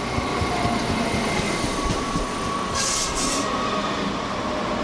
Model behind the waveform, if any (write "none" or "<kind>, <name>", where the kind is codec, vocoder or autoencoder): none